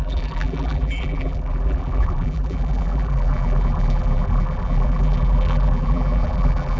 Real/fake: fake